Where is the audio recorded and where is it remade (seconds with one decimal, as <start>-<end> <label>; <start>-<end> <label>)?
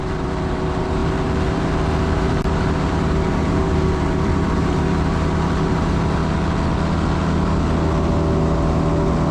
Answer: 0.0-6.2 remade; 6.2-9.3 recorded